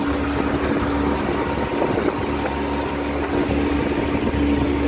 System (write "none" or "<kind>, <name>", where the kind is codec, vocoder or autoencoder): none